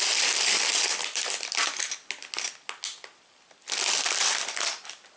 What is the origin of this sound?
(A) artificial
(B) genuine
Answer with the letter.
B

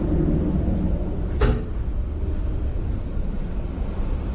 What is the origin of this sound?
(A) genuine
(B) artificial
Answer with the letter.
A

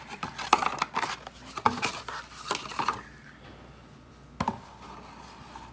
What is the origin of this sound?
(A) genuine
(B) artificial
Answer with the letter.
A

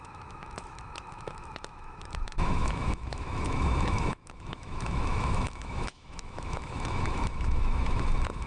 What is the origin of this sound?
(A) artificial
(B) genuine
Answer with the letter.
A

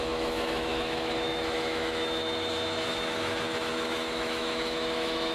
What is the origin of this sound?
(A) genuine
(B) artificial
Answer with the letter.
B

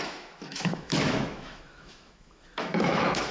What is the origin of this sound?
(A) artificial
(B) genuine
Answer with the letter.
A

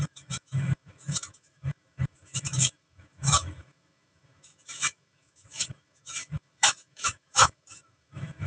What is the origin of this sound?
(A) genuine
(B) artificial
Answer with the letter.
B